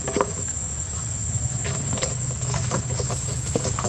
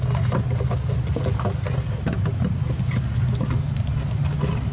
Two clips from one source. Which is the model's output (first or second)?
first